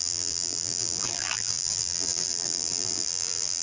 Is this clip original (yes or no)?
no